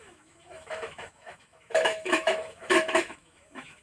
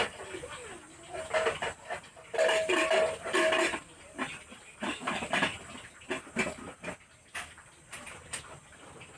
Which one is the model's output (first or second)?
first